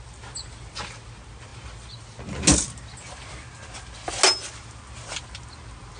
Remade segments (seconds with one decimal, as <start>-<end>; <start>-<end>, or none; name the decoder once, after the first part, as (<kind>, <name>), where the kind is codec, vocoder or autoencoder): none